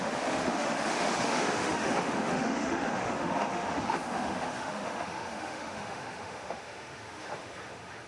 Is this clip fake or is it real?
fake